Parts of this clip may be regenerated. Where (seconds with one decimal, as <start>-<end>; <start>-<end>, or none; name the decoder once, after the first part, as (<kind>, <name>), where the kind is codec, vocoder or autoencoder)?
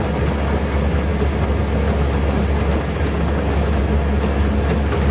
none